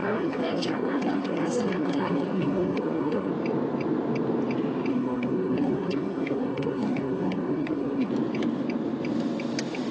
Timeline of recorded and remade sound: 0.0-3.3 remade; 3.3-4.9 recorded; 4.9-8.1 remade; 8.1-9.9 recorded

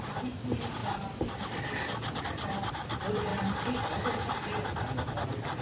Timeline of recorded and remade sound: 0.0-5.6 recorded

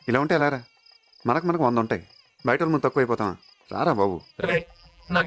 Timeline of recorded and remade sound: 0.0-4.4 recorded; 4.4-5.3 remade

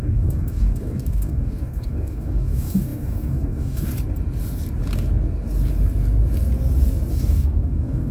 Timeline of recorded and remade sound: 0.0-3.9 remade; 3.9-7.1 recorded; 7.1-8.1 remade